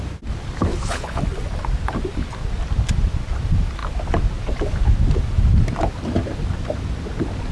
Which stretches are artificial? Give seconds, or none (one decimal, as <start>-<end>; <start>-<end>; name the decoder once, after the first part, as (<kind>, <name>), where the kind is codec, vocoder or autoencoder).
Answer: 0.7-1.2 (codec, HILCodec)